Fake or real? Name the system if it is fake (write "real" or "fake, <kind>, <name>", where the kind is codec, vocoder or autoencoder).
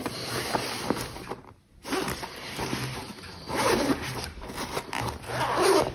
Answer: fake, vocoder, BigVGAN v2